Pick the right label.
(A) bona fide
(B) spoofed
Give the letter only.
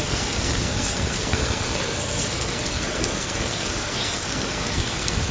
B